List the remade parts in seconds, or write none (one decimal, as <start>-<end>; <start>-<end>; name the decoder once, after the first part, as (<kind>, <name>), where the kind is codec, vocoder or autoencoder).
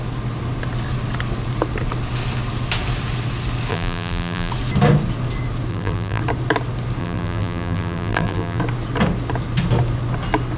3.7-4.5 (vocoder, BigVGAN v2); 5.7-6.2; 7.0-8.6